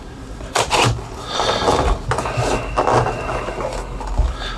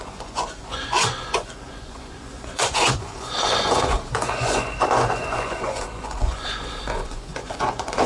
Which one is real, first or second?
first